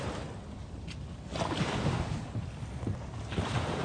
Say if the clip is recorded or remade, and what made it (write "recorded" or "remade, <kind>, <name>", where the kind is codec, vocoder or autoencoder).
recorded